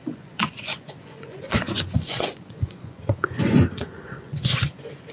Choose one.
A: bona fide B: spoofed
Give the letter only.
B